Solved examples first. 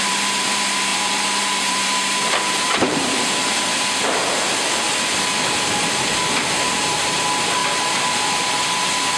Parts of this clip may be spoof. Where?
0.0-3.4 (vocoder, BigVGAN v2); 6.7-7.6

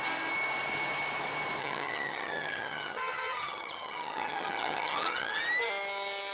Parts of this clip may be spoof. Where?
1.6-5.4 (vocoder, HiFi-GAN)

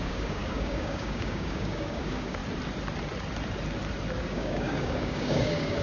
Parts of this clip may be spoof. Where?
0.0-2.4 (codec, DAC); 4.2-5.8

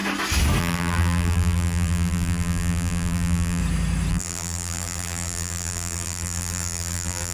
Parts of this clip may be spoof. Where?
0.6-3.6 (vocoder, BigVGAN v2); 4.1-7.3

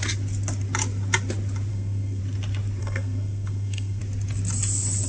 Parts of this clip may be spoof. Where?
1.7-2.2 (codec, SNAC); 2.8-4.0

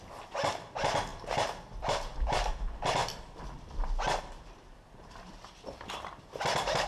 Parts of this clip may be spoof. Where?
none